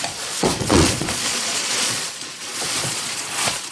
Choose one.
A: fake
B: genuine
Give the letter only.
A